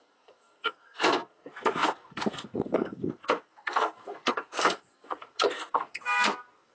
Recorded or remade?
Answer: remade